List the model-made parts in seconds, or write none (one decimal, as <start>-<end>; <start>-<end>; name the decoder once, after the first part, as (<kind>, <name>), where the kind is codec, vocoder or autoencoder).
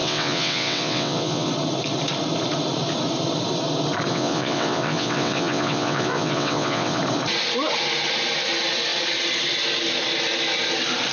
0.0-1.5 (vocoder, WaveNeXt); 4.1-7.0